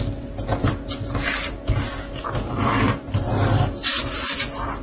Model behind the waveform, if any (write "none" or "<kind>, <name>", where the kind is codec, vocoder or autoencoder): none